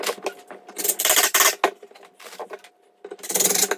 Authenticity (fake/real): real